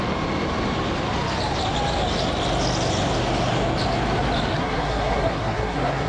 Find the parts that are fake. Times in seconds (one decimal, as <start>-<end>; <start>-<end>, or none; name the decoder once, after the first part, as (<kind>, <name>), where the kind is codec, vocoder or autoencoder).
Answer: 4.5-6.1 (codec, SNAC)